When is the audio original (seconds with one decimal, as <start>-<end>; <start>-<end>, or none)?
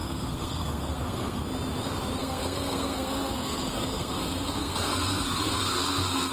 1.4-2.2